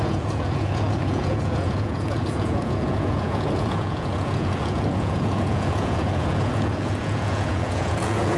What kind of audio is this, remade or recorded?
remade